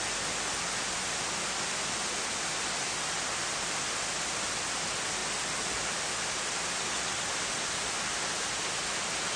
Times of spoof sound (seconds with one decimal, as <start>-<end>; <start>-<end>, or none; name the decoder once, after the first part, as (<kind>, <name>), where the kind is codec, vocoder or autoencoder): none